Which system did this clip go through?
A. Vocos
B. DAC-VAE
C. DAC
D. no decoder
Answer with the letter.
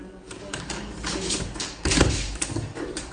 C